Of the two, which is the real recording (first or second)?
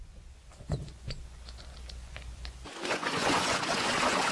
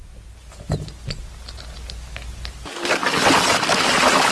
second